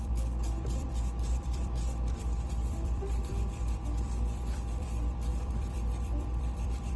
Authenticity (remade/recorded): remade